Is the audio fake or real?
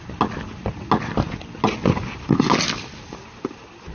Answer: real